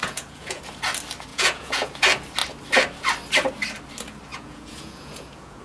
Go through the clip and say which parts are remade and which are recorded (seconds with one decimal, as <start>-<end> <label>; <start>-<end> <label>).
0.0-0.6 remade; 0.6-1.3 recorded; 1.3-1.9 remade; 1.9-4.3 recorded; 4.3-5.6 remade